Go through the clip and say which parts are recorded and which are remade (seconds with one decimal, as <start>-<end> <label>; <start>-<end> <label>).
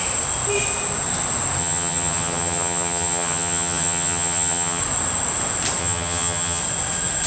0.0-1.6 recorded; 1.6-4.8 remade; 4.8-5.8 recorded; 5.8-6.6 remade; 6.6-7.3 recorded